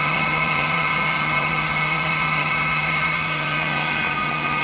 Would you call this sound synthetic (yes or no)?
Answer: yes